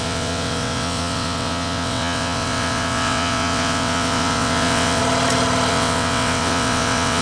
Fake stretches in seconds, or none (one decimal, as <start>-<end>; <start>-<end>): 0.0-5.0; 5.7-7.2

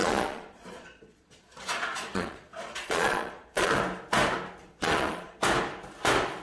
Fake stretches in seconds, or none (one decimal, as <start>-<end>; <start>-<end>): 0.0-3.8; 4.6-5.4

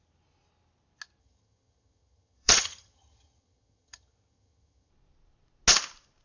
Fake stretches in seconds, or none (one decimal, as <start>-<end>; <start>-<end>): 1.2-4.9

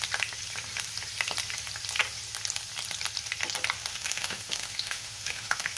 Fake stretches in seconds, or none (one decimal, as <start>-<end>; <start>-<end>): 3.9-5.8

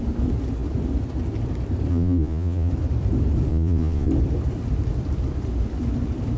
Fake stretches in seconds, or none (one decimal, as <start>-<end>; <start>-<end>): 1.9-2.7; 3.5-4.1

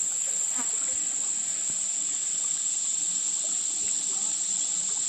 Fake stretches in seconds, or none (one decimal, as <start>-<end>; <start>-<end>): none

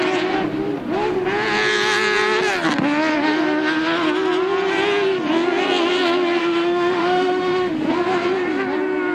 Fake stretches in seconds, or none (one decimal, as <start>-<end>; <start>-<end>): 6.4-7.7